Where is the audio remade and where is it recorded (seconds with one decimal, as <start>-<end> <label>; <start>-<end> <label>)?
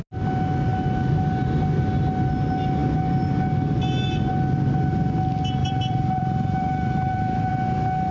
0.0-5.6 recorded; 5.6-7.5 remade; 7.5-8.1 recorded